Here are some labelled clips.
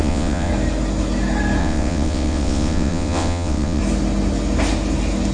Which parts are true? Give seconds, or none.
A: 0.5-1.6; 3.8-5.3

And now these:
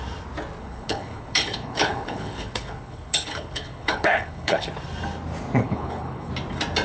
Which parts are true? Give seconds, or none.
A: 0.0-0.6; 4.7-5.6; 6.3-6.8

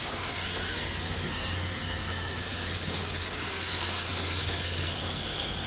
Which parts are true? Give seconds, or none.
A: none

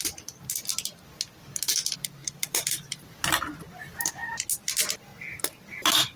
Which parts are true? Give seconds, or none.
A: 0.0-2.2; 3.4-6.2